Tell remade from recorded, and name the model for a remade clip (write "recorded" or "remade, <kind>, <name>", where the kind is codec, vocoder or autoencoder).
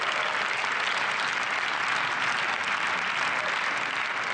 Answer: recorded